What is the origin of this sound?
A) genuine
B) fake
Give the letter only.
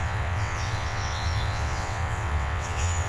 B